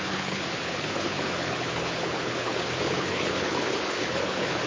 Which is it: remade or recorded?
remade